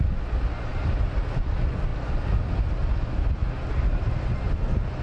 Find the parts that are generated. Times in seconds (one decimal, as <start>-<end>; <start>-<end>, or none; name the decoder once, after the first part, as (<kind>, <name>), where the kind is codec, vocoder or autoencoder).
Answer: none